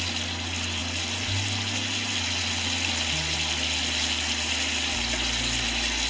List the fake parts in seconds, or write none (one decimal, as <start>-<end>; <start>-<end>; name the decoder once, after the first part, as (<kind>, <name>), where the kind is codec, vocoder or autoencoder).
none